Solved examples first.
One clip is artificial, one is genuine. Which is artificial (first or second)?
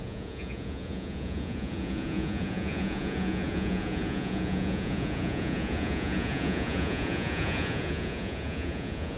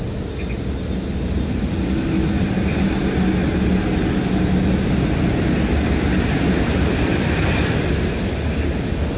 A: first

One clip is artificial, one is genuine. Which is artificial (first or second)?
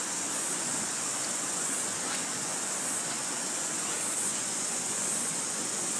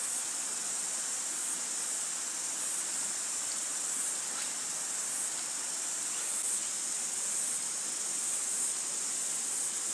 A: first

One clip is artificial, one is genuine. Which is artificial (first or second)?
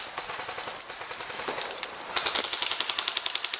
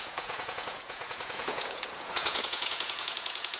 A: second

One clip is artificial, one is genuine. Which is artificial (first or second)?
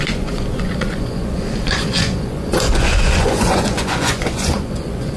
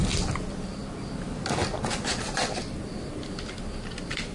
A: first